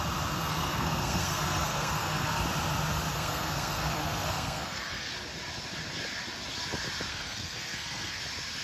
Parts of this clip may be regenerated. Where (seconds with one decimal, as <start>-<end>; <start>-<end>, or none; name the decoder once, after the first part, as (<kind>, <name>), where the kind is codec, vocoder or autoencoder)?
0.5-2.4 (codec, SNAC); 3.1-5.1; 7.1-8.2